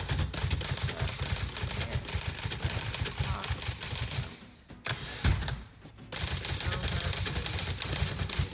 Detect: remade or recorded recorded